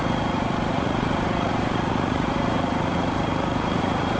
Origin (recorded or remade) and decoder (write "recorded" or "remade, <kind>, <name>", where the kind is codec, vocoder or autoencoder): remade, vocoder, Vocos